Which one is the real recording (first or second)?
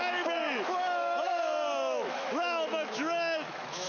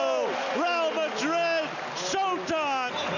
second